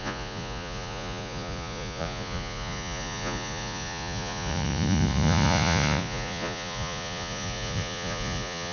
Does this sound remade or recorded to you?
remade